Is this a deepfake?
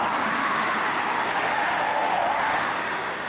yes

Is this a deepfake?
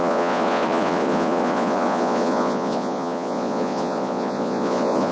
yes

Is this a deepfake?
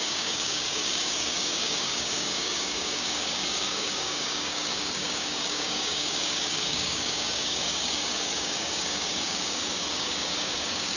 yes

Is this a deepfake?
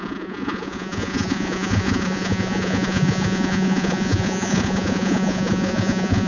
yes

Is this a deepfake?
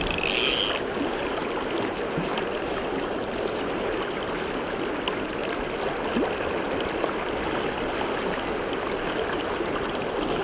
no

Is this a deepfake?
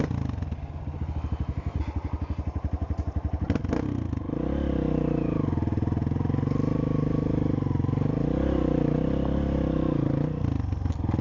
no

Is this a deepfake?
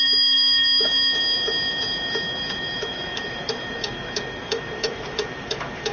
yes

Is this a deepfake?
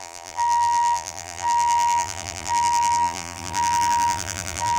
yes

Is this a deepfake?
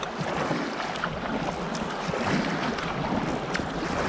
no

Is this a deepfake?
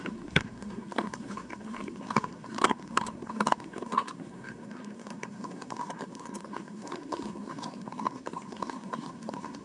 yes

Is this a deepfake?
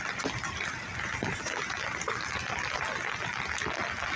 no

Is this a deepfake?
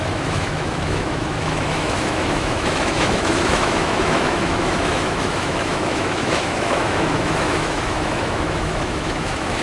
yes